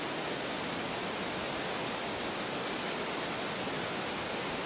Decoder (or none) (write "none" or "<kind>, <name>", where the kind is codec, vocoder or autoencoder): none